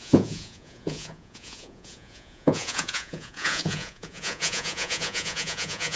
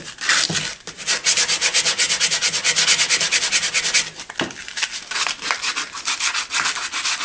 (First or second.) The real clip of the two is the second